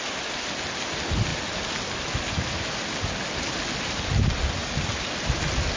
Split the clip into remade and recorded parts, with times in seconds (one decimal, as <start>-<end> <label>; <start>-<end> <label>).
0.0-5.8 recorded